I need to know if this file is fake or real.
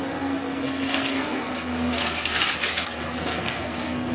fake